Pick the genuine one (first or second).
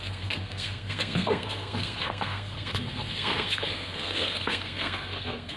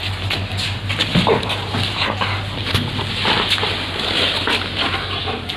second